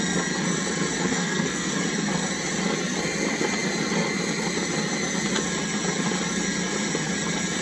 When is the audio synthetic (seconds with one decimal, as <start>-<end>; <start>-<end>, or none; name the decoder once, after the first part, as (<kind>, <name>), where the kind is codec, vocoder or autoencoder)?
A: 1.0-1.7 (codec, SNAC)